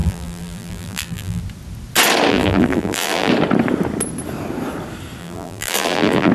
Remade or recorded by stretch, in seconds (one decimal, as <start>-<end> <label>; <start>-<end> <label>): 0.0-1.4 remade; 1.4-2.3 recorded; 2.3-3.3 remade; 3.3-5.2 recorded; 5.2-6.3 remade

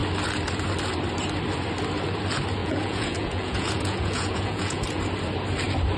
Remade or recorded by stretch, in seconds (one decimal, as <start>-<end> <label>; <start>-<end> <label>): 0.0-2.6 recorded; 2.6-5.0 remade; 5.0-6.0 recorded

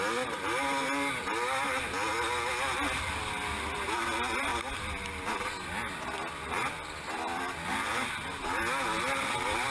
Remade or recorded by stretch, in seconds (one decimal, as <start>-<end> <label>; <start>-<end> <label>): 0.0-9.7 recorded

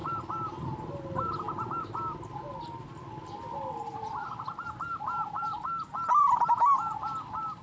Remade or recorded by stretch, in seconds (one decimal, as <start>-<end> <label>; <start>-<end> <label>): 0.0-7.6 recorded

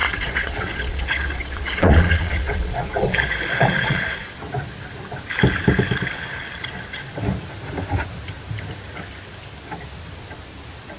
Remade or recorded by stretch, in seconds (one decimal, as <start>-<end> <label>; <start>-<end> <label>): 0.0-4.3 remade; 4.3-11.0 recorded